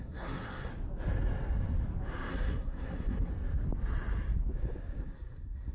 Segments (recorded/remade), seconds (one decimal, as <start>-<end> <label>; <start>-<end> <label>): 0.0-0.7 remade; 0.7-2.3 recorded; 2.3-3.3 remade; 3.3-5.0 recorded; 5.0-5.7 remade